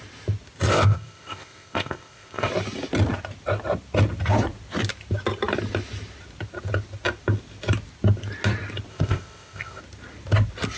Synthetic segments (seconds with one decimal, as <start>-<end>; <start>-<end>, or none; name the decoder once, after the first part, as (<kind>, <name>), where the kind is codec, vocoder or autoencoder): 0.7-2.5 (codec, ZipCodec); 8.9-9.8